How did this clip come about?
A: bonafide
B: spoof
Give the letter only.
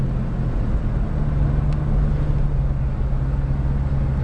A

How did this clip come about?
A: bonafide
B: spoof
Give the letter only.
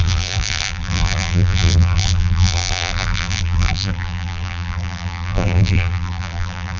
B